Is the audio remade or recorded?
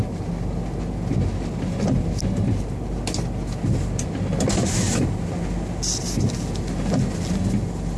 recorded